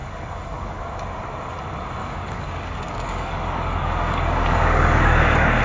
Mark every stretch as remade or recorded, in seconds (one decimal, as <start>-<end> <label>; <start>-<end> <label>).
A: 0.0-0.8 remade; 0.8-2.0 recorded; 2.0-5.6 remade